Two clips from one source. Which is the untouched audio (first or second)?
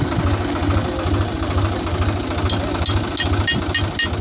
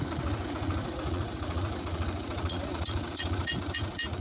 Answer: first